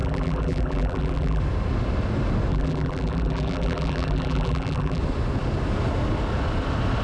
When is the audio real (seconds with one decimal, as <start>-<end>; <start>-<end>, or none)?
1.4-2.5; 5.0-7.0